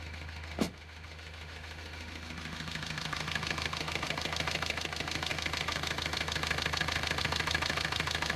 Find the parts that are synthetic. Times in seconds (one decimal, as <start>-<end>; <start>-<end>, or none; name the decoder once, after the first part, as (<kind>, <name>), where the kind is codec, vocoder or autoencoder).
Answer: 0.0-8.4 (autoencoder, DAC-VAE)